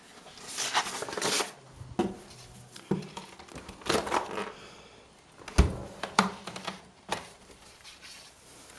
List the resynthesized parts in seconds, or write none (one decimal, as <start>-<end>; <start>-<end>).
5.8-8.2